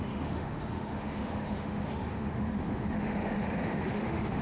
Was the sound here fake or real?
fake